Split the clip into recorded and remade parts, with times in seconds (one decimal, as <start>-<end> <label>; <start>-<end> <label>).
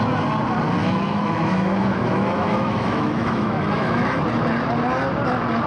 0.0-0.8 recorded; 0.8-4.2 remade; 4.2-5.7 recorded